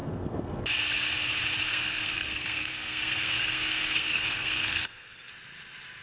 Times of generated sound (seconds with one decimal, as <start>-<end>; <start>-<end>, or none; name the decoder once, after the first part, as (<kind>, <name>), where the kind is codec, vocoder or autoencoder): 0.0-0.6 (codec, SNAC); 1.7-5.3